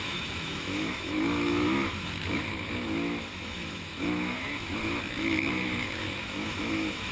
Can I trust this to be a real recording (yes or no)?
no